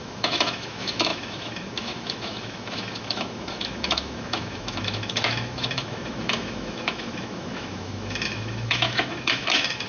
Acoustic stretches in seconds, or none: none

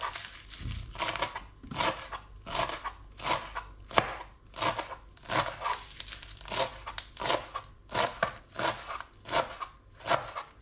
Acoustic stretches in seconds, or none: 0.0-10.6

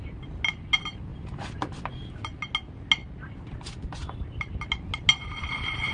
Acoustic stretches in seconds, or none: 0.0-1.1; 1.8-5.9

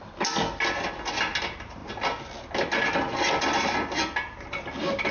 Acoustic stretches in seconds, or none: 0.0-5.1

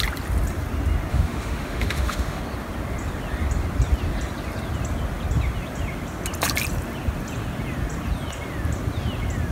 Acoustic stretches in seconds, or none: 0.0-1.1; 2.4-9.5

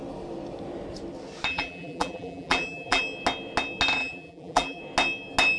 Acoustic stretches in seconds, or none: 0.0-1.5; 3.0-4.0; 4.8-5.6

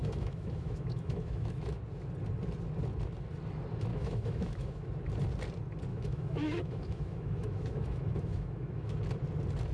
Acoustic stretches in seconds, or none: 1.8-3.9; 4.9-5.9; 9.0-9.7

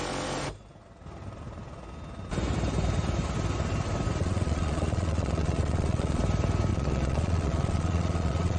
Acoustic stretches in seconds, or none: 0.0-4.2; 6.2-6.7